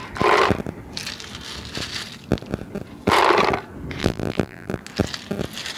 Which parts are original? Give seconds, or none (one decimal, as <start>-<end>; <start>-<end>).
0.0-4.0; 4.8-5.8